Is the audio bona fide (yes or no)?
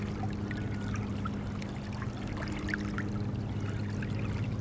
yes